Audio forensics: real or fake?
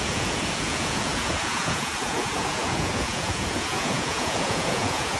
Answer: fake